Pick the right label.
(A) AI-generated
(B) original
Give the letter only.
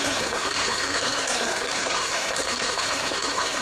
A